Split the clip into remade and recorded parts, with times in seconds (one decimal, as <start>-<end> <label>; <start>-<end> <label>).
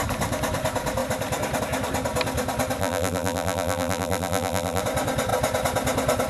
0.0-2.8 recorded; 2.8-4.8 remade; 4.8-6.3 recorded